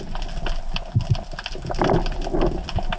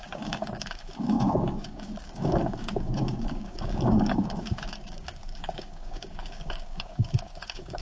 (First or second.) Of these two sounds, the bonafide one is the first